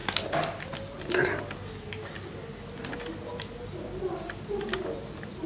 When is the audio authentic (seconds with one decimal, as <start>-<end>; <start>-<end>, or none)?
0.0-5.5